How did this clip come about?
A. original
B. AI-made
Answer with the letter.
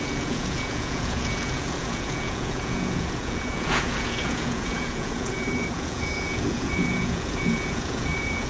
B